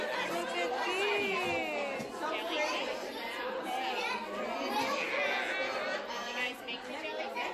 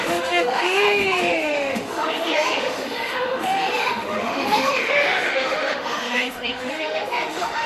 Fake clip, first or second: second